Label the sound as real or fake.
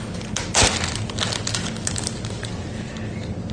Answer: real